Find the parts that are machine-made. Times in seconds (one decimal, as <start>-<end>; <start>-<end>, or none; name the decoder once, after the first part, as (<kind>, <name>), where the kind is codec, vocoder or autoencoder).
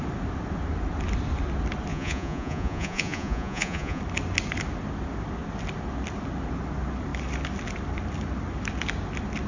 1.9-4.0 (vocoder, Vocos)